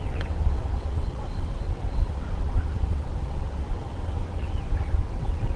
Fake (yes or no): yes